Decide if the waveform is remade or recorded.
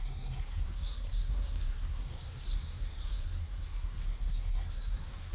remade